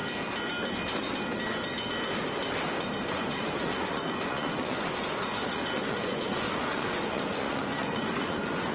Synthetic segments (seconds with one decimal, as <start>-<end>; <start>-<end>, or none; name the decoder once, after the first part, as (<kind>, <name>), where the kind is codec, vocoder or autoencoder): 3.1-8.7 (vocoder, Vocos)

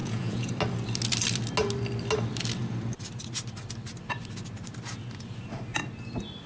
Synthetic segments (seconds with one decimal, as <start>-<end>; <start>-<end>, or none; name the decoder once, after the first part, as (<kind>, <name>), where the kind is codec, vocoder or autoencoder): 0.0-0.5 (vocoder, Vocos)

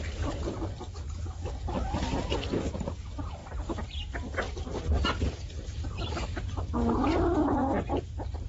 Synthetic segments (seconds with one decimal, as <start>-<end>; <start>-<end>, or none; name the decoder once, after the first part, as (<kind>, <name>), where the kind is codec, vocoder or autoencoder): none

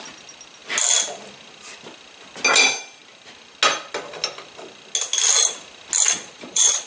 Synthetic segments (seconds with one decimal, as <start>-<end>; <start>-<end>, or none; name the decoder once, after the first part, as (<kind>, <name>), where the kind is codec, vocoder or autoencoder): 6.1-6.9 (vocoder, Vocos)

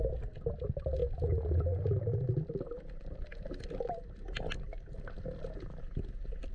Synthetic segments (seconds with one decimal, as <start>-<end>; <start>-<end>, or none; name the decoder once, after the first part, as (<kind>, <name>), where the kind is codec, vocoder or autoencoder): none

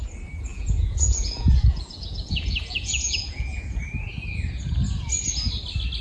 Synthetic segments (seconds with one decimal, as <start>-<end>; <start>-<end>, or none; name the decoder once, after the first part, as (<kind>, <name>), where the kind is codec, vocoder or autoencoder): 0.5-3.8 (vocoder, Vocos)